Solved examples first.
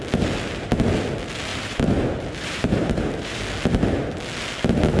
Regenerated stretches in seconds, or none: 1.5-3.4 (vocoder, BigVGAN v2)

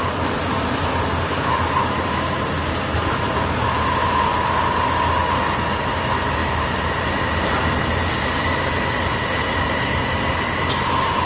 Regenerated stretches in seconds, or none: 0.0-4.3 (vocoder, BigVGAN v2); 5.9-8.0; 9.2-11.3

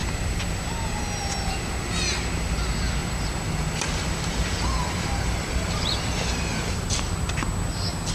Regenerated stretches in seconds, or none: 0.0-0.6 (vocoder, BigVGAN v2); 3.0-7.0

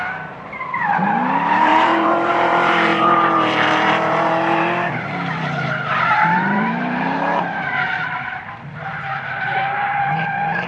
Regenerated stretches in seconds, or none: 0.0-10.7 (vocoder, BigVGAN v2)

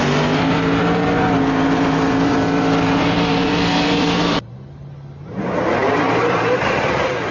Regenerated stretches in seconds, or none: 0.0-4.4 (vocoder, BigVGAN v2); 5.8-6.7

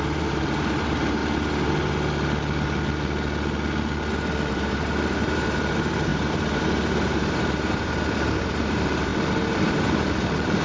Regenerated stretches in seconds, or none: 0.0-1.2 (vocoder, BigVGAN v2); 4.5-9.1; 10.2-10.6